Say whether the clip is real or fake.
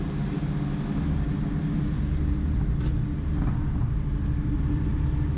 real